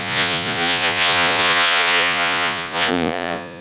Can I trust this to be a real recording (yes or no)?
no